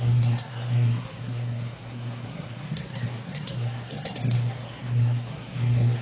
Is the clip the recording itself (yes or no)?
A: no